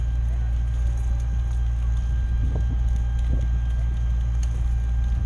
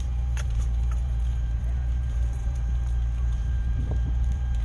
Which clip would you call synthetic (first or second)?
second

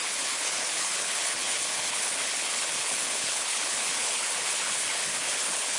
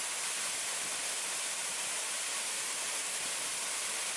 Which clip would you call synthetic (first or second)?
first